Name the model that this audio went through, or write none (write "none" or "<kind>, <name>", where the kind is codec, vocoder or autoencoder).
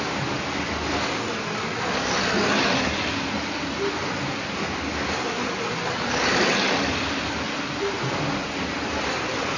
none